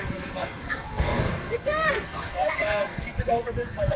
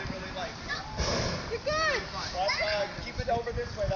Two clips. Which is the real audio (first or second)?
second